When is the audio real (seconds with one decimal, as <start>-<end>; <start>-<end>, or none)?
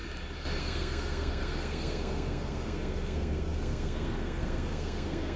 0.0-0.6